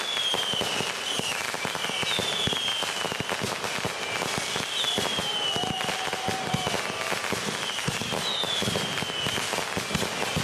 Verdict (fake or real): real